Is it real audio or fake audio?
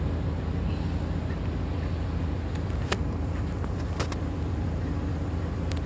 real